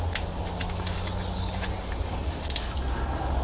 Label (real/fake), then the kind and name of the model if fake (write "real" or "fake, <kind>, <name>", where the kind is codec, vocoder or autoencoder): real